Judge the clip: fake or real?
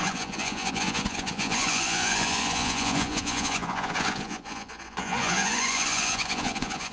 fake